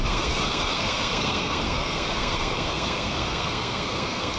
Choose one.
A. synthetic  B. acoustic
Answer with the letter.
A